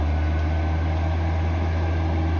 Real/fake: real